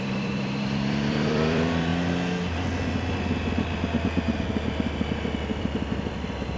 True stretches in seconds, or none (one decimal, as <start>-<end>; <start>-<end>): 1.9-5.6